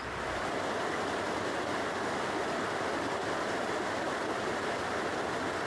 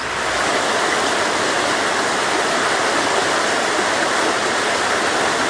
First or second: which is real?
second